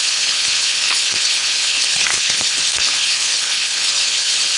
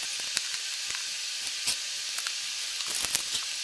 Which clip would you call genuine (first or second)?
second